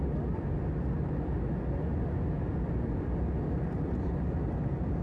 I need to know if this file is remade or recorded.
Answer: recorded